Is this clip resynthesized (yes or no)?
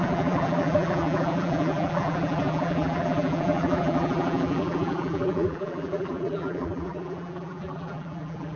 yes